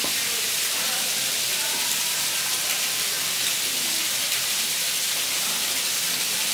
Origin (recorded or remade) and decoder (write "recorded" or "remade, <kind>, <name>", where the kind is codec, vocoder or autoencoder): remade, vocoder, BigVGAN v2